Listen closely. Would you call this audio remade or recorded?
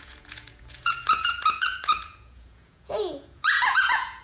remade